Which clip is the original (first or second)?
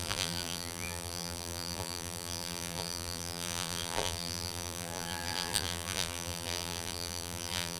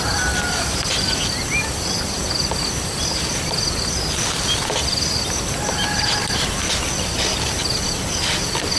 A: second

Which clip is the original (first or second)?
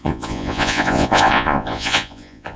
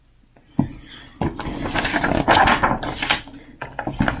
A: second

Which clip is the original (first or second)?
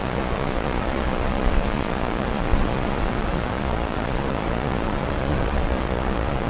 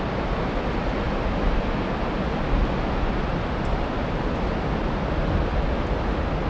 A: second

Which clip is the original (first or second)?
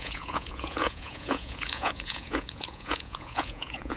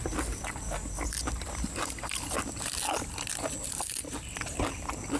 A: second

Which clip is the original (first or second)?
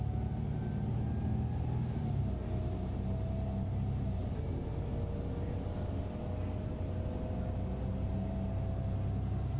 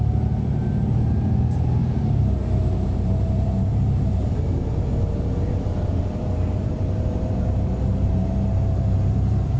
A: first